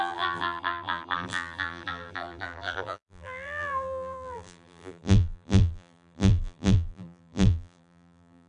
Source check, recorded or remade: remade